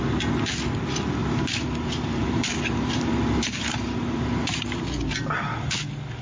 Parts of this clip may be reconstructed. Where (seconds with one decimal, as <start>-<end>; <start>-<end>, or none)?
1.2-4.9